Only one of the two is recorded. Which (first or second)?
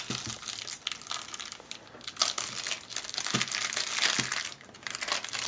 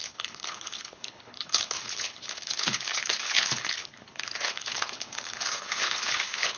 first